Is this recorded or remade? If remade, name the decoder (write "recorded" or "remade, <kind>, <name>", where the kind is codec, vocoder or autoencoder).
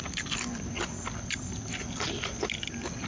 recorded